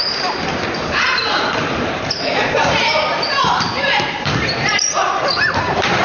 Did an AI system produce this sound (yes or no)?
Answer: yes